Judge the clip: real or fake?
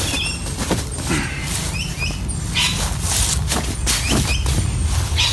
real